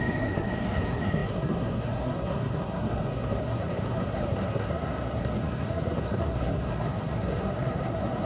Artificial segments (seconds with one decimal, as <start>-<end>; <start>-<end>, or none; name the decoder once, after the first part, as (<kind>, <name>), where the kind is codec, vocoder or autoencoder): 0.0-8.3 (codec, SNAC)